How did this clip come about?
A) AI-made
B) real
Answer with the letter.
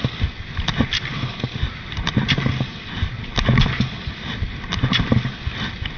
B